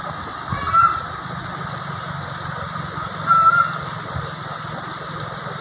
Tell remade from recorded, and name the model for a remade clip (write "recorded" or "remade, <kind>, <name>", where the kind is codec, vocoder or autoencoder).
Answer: recorded